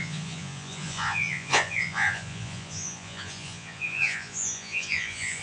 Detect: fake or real fake